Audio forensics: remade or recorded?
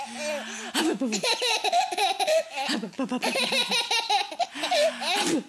recorded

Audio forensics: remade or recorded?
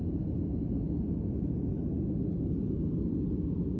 recorded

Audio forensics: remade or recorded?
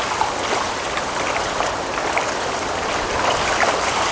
recorded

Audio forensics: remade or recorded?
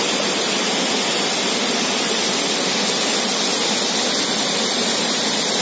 recorded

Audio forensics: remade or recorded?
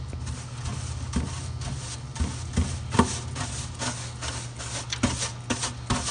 recorded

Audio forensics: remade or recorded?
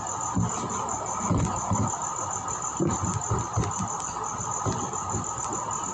recorded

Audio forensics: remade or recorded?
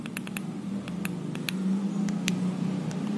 recorded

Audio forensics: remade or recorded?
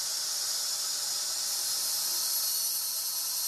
recorded